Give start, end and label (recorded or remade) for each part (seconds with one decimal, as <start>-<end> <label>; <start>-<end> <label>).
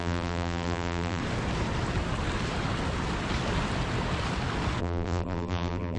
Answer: 0.0-1.2 remade; 1.2-4.8 recorded; 4.8-6.0 remade